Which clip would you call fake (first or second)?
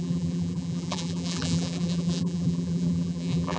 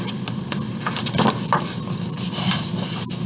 first